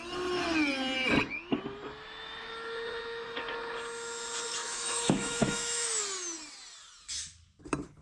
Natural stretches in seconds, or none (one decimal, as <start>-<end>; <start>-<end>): 0.0-4.6; 6.0-8.0